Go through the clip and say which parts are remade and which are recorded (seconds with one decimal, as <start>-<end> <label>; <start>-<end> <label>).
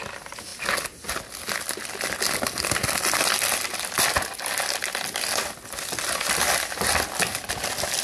0.0-8.0 recorded